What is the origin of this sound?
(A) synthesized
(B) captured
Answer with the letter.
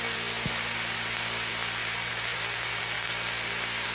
B